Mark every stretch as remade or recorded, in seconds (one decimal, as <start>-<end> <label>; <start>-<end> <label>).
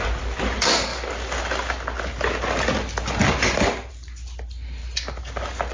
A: 0.0-5.7 recorded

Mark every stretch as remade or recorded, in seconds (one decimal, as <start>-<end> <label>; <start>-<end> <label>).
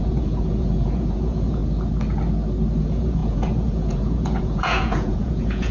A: 0.0-1.6 remade; 1.6-2.8 recorded; 2.8-5.7 remade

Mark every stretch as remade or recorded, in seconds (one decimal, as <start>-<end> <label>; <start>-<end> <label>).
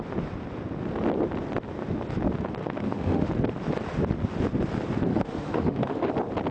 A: 0.0-2.6 recorded; 2.6-3.3 remade; 3.3-5.1 recorded; 5.1-6.1 remade; 6.1-6.5 recorded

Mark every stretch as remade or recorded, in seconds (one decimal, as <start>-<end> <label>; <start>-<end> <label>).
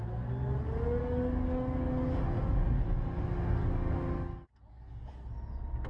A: 0.0-1.0 recorded; 1.0-2.4 remade; 2.4-3.6 recorded; 3.6-5.1 remade; 5.1-5.9 recorded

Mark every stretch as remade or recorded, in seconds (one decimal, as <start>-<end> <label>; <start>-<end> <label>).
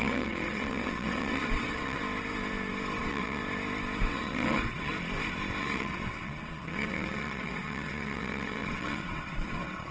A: 0.0-2.0 remade; 2.0-3.0 recorded; 3.0-3.4 remade; 3.4-4.0 recorded; 4.0-4.9 remade; 4.9-5.6 recorded; 5.6-9.9 remade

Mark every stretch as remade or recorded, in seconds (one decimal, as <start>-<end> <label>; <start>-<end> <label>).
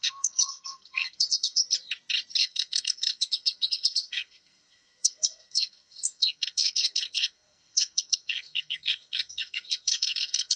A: 0.0-1.6 remade; 1.6-2.4 recorded; 2.4-10.6 remade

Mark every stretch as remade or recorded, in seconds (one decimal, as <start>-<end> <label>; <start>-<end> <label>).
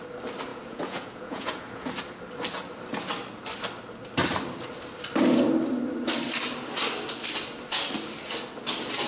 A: 0.0-0.5 recorded; 0.5-1.9 remade; 1.9-9.1 recorded